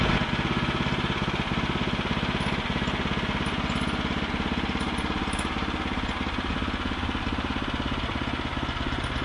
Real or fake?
real